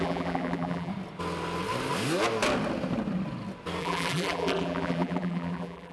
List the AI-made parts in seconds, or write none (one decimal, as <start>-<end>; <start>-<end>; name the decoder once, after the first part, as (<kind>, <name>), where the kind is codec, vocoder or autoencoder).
0.0-0.9 (vocoder, BigVGAN v2); 3.8-5.9